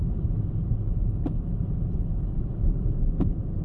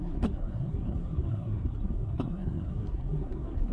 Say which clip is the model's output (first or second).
second